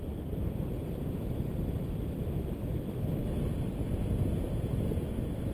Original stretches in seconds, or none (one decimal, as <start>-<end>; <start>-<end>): 0.0-5.5